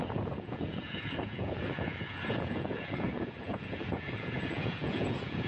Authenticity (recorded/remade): remade